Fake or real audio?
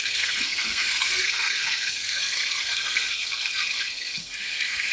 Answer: fake